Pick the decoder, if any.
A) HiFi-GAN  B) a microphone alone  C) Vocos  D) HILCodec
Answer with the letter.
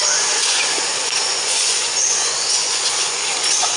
C